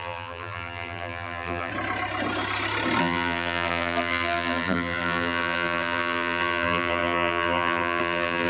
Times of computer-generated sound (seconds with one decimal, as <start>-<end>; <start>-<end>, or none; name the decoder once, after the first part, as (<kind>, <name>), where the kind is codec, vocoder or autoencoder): 0.0-1.7 (vocoder, BigVGAN v2); 3.0-8.5